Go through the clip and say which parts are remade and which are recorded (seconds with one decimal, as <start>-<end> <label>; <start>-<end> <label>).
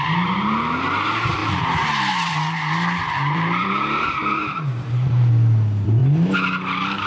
0.0-1.4 recorded; 1.4-5.3 remade; 5.3-7.1 recorded